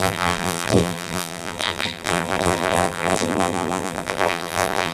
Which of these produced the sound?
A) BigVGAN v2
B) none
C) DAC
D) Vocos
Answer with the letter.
A